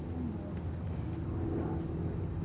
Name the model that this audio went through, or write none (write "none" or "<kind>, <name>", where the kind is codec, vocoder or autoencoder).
none